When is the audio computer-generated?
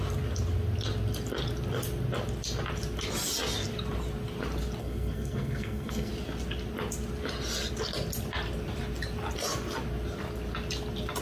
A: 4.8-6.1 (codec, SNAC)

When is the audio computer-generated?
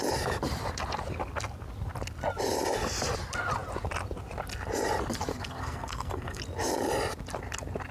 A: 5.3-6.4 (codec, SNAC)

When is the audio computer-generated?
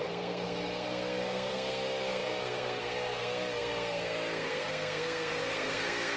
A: 0.0-6.2 (codec, SNAC)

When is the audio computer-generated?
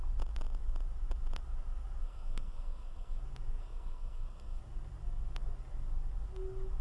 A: 2.0-3.2 (codec, SNAC); 3.6-4.6